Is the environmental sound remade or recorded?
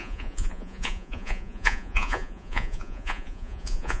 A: remade